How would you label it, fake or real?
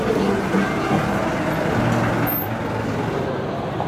real